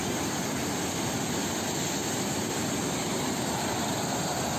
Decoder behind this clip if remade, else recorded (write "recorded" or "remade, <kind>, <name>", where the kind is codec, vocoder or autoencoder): recorded